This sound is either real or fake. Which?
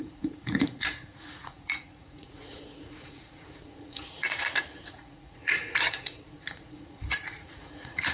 fake